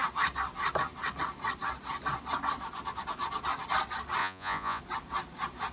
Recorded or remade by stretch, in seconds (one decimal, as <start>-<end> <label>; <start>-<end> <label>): 0.0-4.2 recorded; 4.2-4.8 remade; 4.8-5.7 recorded

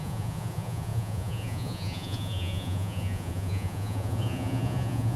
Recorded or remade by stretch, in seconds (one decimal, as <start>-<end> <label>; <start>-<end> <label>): 0.0-5.2 remade

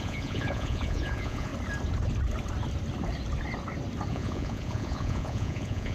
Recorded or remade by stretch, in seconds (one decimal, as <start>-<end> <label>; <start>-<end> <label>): 0.0-1.5 remade; 1.5-4.1 recorded; 4.1-5.9 remade